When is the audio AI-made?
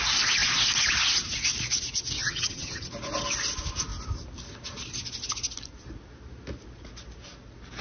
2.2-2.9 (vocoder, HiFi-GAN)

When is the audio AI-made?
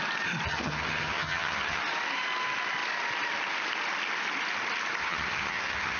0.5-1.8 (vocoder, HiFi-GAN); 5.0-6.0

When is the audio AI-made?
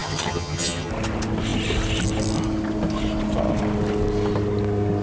0.0-0.9 (vocoder, HiFi-GAN)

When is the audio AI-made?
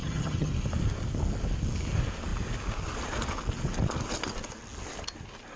0.0-0.5 (vocoder, HiFi-GAN)